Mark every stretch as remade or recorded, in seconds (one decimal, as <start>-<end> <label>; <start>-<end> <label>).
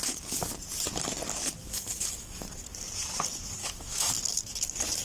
0.0-1.6 recorded; 1.6-2.5 remade; 2.5-3.6 recorded; 3.6-4.1 remade; 4.1-5.0 recorded